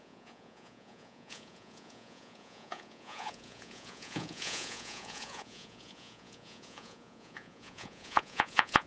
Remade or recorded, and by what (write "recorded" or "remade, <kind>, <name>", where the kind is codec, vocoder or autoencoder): remade, vocoder, Vocos